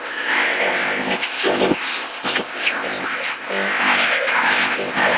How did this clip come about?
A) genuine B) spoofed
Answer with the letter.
B